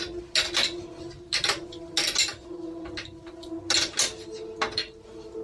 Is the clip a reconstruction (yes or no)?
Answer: no